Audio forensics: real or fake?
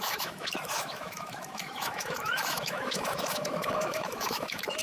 fake